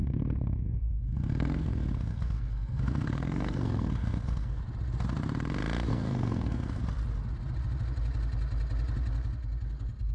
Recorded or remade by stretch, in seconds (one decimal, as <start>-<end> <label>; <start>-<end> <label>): 0.0-4.6 remade; 4.6-5.9 recorded; 5.9-6.8 remade; 6.8-10.1 recorded